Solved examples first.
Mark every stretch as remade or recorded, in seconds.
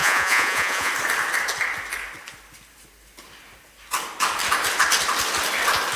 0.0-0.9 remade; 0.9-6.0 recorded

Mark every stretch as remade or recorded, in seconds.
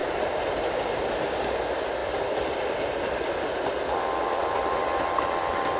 0.0-2.0 recorded; 2.0-3.3 remade; 3.3-4.4 recorded; 4.4-5.8 remade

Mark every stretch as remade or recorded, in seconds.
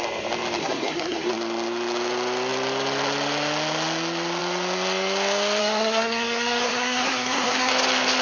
0.0-0.6 recorded; 0.6-1.3 remade; 1.3-5.6 recorded; 5.6-7.7 remade; 7.7-8.2 recorded